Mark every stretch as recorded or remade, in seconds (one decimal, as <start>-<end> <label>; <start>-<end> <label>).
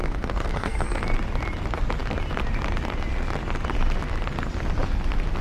0.0-1.0 remade; 1.0-5.4 recorded